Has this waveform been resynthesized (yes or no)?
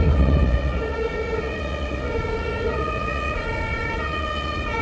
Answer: yes